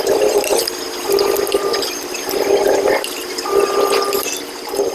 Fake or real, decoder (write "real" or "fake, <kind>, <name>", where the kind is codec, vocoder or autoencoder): real